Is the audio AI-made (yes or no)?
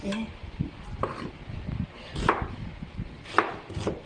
yes